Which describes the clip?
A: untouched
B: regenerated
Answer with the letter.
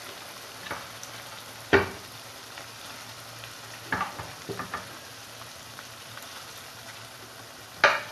A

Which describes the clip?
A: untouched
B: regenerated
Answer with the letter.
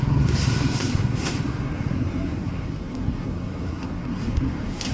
B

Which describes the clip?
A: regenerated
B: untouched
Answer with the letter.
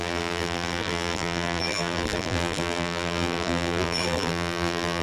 A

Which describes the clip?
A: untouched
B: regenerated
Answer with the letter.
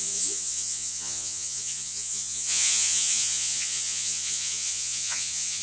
B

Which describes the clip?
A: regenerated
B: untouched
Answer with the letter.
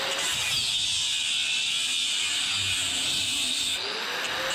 B